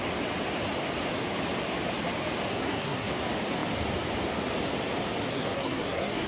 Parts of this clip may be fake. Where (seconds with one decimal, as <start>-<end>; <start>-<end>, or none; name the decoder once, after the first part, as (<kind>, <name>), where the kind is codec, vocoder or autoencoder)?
2.5-3.1 (codec, SNAC); 5.3-6.3